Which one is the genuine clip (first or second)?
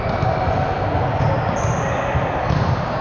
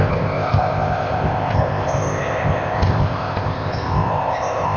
first